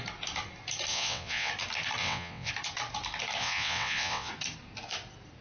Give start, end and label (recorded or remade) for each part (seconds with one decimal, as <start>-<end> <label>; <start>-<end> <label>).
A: 0.0-0.9 recorded; 0.9-1.5 remade; 1.5-2.0 recorded; 2.0-2.5 remade; 2.5-3.4 recorded; 3.4-4.3 remade; 4.3-5.4 recorded